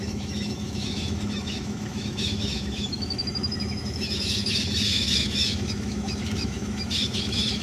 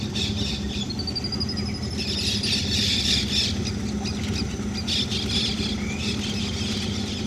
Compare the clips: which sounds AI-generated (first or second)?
first